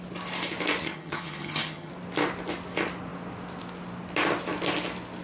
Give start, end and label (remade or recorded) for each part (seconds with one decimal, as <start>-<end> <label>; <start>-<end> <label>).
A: 0.0-0.8 recorded; 0.8-1.9 remade; 1.9-5.2 recorded